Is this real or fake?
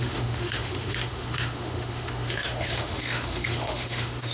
fake